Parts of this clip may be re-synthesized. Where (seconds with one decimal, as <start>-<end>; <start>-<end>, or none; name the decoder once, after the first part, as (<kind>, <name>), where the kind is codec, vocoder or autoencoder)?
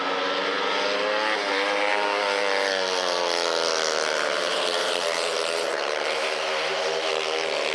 4.5-7.1 (vocoder, BigVGAN v2)